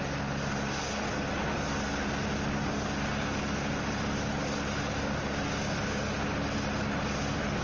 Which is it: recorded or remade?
recorded